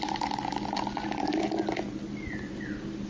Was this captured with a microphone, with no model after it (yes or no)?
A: yes